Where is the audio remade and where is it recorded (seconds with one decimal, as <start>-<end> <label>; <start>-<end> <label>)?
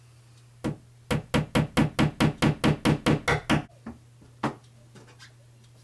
0.0-5.8 recorded